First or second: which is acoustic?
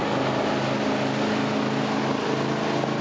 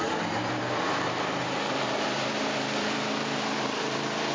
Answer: first